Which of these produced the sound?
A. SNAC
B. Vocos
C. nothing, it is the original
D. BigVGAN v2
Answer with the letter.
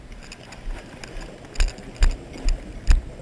C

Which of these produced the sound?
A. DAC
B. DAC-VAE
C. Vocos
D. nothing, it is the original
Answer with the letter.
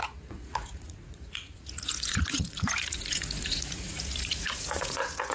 C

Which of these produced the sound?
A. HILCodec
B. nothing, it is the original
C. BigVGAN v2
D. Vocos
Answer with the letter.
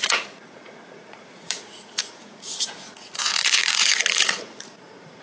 D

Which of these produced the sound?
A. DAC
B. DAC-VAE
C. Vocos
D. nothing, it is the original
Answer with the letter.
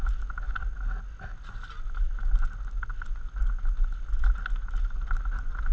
D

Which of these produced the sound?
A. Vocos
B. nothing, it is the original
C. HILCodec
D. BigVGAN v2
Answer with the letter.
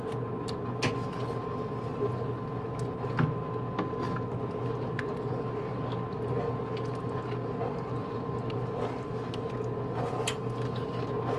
B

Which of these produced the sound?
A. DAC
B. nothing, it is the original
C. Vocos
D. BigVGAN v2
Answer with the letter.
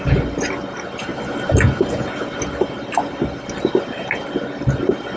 B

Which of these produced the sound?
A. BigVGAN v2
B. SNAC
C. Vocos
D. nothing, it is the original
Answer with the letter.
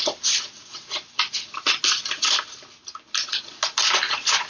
D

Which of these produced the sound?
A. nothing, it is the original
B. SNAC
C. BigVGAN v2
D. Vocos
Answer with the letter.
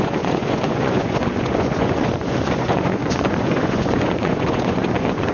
D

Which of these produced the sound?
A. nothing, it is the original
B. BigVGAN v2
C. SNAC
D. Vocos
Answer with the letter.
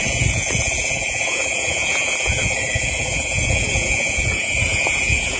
D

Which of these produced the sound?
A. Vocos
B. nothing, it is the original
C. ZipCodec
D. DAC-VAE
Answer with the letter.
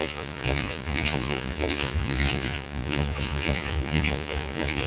A